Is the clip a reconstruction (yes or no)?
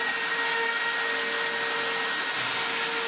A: no